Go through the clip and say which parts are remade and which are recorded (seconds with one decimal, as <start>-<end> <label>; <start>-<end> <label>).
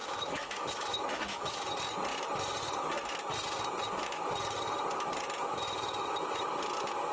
0.0-1.7 remade; 1.7-7.1 recorded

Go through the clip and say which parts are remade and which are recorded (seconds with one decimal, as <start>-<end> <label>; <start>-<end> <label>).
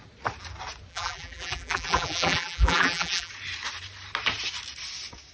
0.0-0.9 recorded; 0.9-3.3 remade; 3.3-5.3 recorded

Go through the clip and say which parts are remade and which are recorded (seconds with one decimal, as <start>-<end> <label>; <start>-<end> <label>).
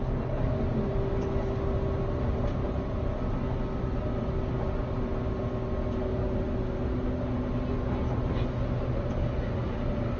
0.0-10.2 recorded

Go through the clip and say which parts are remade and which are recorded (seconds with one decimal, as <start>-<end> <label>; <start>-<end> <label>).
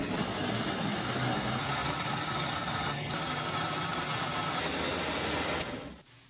0.0-6.3 recorded